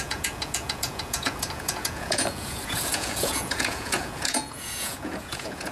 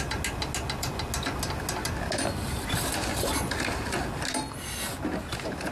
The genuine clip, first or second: second